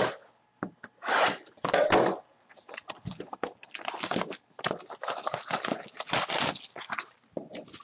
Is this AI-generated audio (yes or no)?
no